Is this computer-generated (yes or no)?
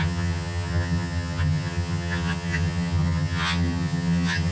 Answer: yes